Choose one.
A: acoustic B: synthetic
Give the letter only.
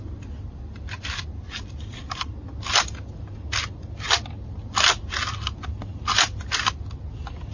A